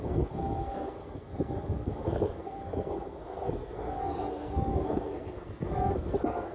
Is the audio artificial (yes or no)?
yes